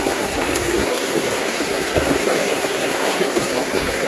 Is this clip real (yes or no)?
no